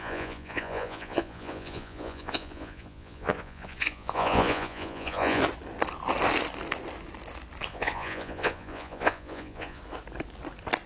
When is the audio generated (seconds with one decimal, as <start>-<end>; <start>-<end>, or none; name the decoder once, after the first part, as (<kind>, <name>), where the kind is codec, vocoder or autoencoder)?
0.0-5.4 (vocoder, Vocos); 7.7-9.8